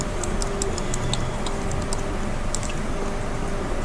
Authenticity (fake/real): real